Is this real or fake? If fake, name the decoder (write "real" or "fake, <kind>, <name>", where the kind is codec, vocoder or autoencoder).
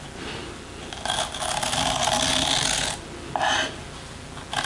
real